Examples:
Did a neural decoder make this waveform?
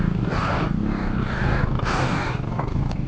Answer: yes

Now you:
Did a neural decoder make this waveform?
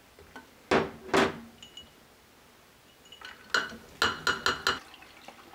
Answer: no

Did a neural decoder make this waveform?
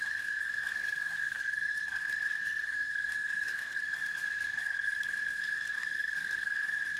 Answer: yes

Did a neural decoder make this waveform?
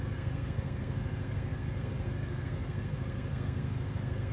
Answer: yes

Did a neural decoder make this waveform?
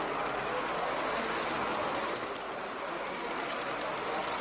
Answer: no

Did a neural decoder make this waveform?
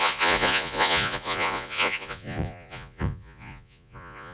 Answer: yes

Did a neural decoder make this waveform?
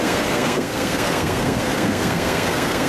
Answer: yes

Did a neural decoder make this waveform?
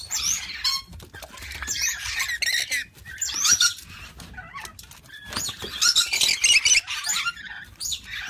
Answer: no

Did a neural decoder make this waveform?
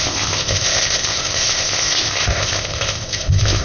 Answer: yes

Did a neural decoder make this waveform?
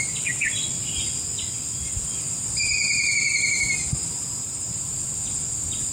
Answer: no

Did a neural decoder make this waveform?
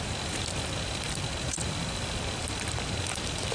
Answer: no